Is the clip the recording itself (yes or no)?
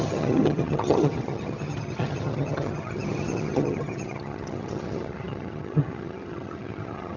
no